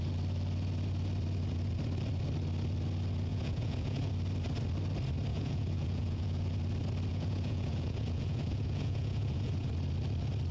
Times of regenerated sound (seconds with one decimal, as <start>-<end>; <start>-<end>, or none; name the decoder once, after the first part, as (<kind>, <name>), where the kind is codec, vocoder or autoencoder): 3.3-4.1 (vocoder, Vocos); 5.3-6.5; 7.1-9.7